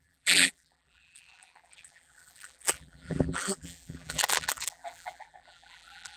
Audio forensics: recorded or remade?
remade